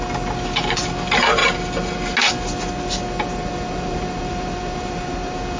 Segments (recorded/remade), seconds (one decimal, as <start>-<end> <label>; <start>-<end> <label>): 0.0-3.4 recorded; 3.4-5.6 remade